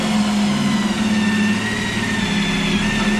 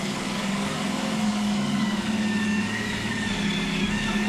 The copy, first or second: second